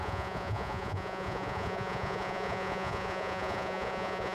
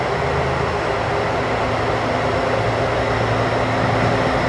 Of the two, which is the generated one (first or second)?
first